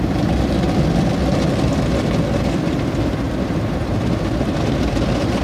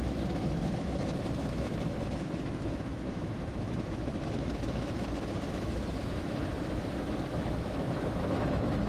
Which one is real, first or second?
first